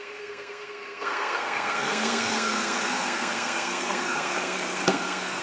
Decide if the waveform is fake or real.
fake